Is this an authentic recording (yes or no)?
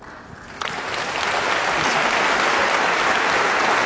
yes